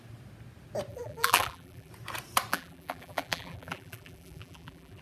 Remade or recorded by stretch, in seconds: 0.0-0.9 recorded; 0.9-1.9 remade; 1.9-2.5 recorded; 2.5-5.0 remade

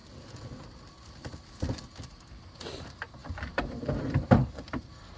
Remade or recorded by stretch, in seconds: 0.0-2.6 recorded; 2.6-3.2 remade; 3.2-4.0 recorded; 4.0-5.2 remade

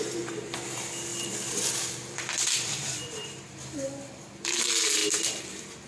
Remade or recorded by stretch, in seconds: 0.0-1.1 recorded; 1.1-4.6 remade; 4.6-5.0 recorded; 5.0-5.5 remade; 5.5-5.9 recorded

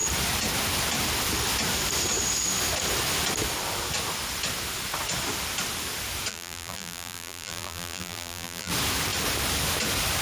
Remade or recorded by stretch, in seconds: 0.0-6.3 recorded; 6.3-8.7 remade; 8.7-10.2 recorded

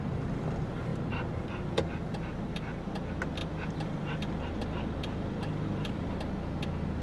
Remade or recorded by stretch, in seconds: 0.0-0.9 recorded; 0.9-2.1 remade; 2.1-3.4 recorded; 3.4-6.1 remade; 6.1-7.0 recorded

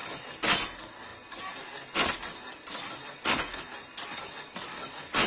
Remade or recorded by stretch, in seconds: 0.0-5.3 recorded